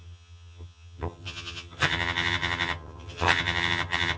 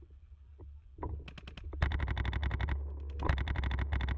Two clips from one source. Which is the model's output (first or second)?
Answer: first